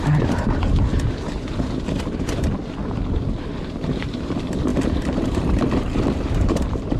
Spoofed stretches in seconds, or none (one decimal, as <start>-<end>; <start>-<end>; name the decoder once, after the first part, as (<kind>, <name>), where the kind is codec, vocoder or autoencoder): 0.0-0.9 (vocoder, BigVGAN v2); 3.6-7.0